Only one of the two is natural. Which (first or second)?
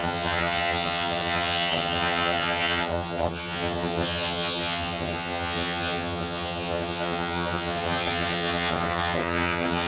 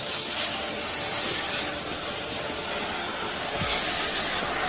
second